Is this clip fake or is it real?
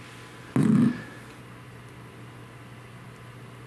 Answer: real